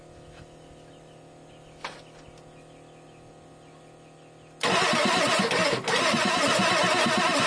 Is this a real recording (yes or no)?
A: yes